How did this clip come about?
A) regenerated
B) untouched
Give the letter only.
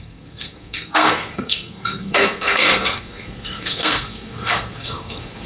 A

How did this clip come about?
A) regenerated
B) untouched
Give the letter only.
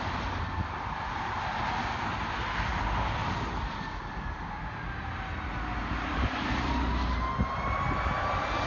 B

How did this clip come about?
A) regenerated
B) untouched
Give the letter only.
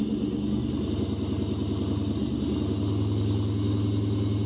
B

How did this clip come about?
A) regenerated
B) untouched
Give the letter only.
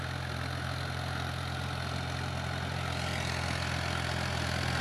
B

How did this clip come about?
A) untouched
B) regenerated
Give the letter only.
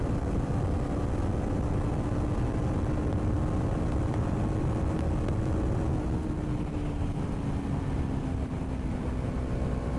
A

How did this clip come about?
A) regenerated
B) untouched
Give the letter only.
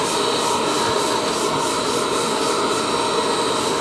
B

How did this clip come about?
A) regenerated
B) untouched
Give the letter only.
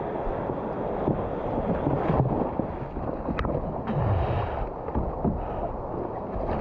B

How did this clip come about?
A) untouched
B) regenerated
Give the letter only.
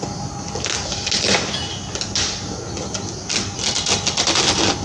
A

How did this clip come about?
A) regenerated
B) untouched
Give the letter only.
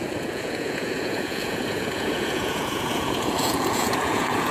A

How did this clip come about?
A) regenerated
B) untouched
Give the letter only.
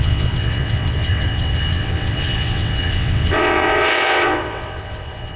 A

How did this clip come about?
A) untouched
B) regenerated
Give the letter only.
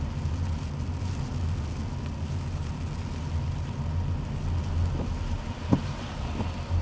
A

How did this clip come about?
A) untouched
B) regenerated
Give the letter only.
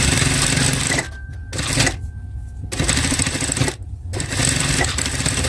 A